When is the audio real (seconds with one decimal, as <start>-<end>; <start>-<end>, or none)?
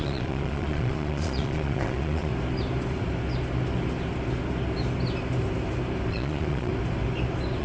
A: 2.3-6.1; 6.7-7.6